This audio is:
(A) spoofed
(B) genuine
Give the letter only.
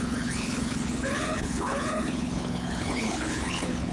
A